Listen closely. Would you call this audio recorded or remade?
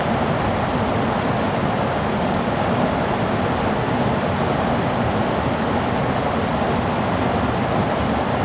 recorded